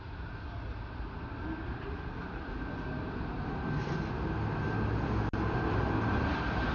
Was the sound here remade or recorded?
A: recorded